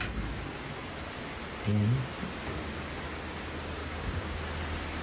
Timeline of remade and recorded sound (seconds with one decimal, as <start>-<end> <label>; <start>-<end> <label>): 0.0-3.8 recorded; 3.8-4.4 remade; 4.4-5.0 recorded